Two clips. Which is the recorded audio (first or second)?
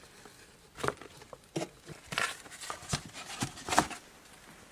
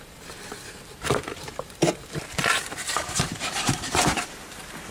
first